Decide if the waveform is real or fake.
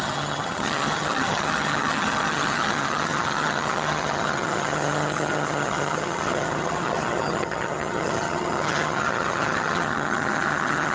fake